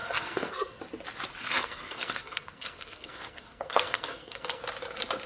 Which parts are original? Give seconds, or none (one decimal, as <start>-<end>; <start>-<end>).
0.8-1.4; 4.6-5.3